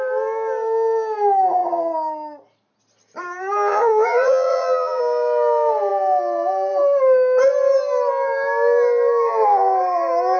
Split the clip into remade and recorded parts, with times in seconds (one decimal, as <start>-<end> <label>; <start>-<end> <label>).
0.0-3.7 recorded; 3.7-5.0 remade; 5.0-10.4 recorded